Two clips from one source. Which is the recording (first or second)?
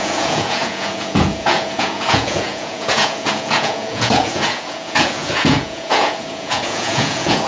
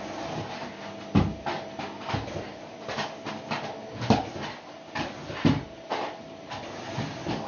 second